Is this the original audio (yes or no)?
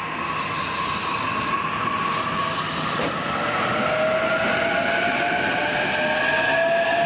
yes